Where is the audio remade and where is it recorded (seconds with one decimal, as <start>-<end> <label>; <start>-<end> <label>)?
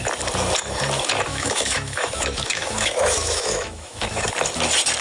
0.0-1.3 recorded; 1.3-4.3 remade; 4.3-5.0 recorded